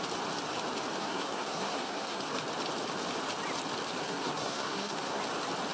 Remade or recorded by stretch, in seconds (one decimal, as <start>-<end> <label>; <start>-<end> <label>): 0.0-1.0 recorded; 1.0-2.2 remade; 2.2-4.0 recorded; 4.0-5.2 remade; 5.2-5.7 recorded